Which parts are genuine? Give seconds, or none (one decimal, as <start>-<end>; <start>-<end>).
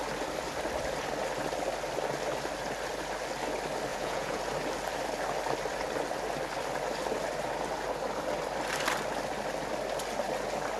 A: 0.0-3.9; 4.4-10.8